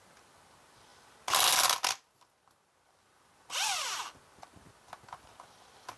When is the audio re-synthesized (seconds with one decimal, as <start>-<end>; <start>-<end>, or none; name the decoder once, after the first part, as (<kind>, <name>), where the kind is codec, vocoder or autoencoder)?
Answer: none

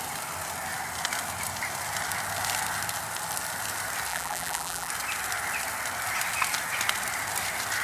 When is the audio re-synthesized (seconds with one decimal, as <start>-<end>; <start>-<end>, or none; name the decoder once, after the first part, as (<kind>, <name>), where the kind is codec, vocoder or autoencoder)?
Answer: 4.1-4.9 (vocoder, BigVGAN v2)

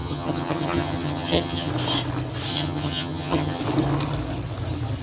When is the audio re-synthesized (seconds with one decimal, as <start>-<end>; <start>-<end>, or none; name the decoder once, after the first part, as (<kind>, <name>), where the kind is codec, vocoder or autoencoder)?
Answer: 0.0-1.7 (vocoder, HiFi-GAN); 2.5-3.6

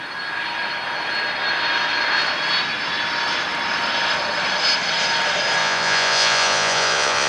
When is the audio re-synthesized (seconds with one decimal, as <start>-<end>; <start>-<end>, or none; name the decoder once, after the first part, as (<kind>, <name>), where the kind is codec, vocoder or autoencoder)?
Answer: 5.6-7.3 (vocoder, Vocos)

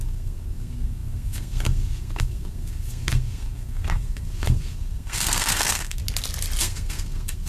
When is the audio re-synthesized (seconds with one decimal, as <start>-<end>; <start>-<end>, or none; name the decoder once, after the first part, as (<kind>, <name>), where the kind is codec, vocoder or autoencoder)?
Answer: 0.0-6.0 (codec, SNAC); 6.6-7.5

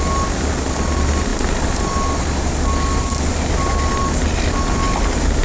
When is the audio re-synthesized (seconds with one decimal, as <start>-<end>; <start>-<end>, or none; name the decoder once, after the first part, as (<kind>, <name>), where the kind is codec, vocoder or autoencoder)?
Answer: none